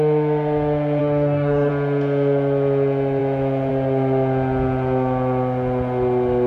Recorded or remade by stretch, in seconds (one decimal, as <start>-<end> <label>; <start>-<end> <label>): 0.0-1.0 recorded; 1.0-1.7 remade; 1.7-6.5 recorded